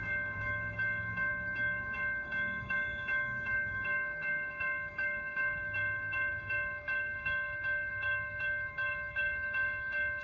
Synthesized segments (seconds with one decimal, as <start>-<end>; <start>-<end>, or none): 0.0-10.2

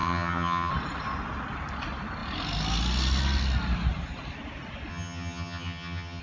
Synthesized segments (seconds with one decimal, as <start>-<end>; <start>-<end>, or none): 0.0-0.7; 4.9-6.2

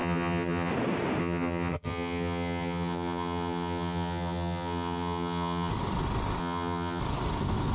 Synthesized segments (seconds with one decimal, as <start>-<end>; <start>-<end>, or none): 0.0-0.7; 1.2-5.7; 6.4-7.0

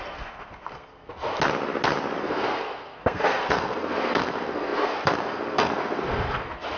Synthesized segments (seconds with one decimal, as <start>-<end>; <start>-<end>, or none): 0.0-1.3; 2.2-6.8